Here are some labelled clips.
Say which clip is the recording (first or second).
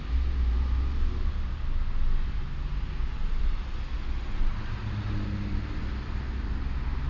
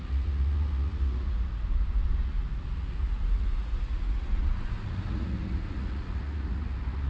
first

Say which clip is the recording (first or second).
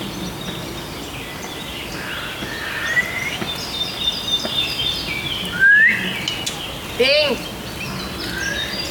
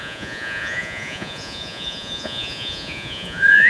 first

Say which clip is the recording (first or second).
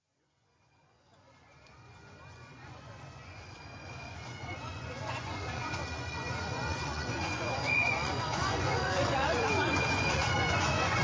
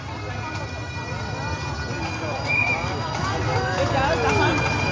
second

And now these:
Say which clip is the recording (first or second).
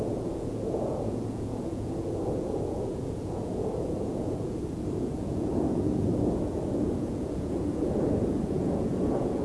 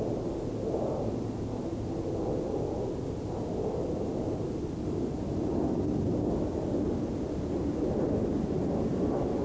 second